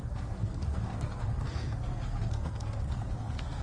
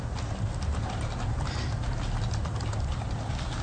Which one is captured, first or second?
second